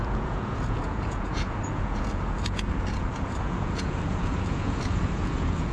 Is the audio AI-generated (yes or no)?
yes